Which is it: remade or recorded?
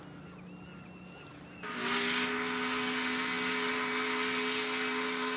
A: recorded